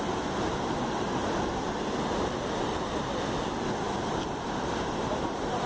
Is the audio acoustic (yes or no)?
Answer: yes